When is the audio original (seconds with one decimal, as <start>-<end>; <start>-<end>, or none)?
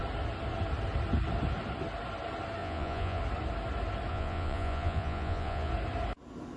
0.0-2.6; 3.2-4.1; 5.7-6.6